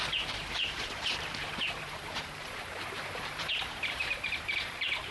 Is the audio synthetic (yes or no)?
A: yes